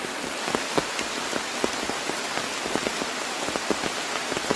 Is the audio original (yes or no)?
yes